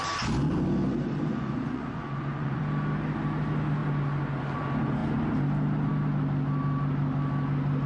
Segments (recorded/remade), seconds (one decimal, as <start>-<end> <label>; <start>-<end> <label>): 0.0-1.3 recorded; 1.3-2.6 remade; 2.6-7.9 recorded